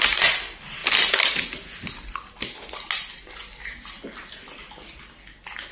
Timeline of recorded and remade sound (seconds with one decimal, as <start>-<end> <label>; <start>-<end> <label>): 0.0-5.7 recorded